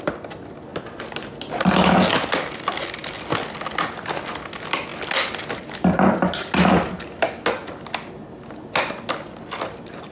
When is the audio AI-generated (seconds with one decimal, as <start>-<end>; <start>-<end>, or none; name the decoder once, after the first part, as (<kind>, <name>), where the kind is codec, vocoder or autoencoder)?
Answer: none